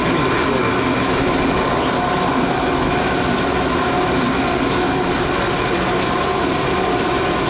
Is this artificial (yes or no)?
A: no